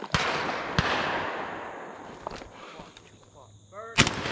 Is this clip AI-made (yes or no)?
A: no